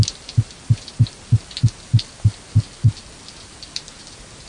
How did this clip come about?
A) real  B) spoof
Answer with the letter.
A